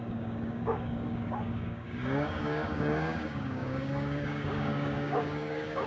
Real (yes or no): no